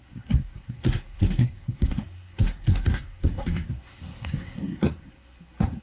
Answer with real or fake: fake